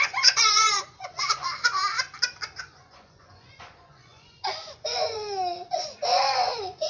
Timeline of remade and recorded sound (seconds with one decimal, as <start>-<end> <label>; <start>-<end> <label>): 0.0-1.8 remade; 1.8-2.6 recorded; 2.6-6.9 remade